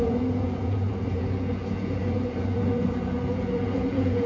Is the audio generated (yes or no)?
yes